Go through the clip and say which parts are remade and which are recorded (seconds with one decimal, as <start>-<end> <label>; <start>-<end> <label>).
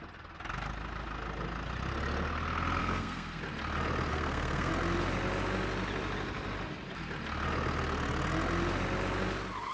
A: 0.0-2.8 recorded; 2.8-3.4 remade; 3.4-4.1 recorded; 4.1-4.7 remade; 4.7-9.7 recorded